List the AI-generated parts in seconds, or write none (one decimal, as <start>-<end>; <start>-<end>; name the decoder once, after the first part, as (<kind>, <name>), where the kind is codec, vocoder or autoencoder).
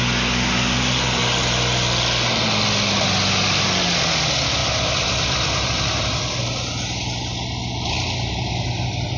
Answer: 4.6-6.4 (vocoder, BigVGAN v2)